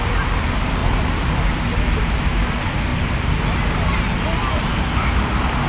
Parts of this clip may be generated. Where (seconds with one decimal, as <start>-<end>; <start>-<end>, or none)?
none